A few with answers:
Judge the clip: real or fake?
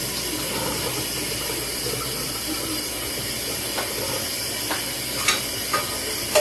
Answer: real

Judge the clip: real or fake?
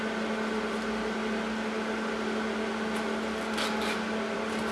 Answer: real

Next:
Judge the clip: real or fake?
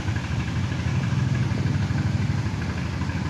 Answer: real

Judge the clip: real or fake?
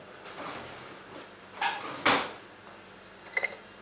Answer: real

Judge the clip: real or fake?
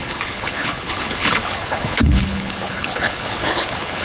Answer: fake